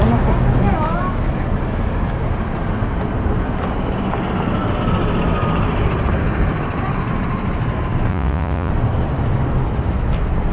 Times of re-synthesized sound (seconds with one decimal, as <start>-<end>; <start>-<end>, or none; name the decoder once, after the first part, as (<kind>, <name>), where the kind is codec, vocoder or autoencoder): 8.1-8.7 (vocoder, Vocos)